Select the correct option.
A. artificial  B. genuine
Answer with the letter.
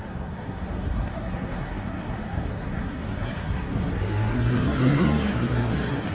A